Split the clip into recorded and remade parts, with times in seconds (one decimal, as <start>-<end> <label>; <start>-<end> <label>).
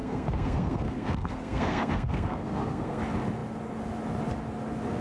0.0-3.0 remade; 3.0-5.0 recorded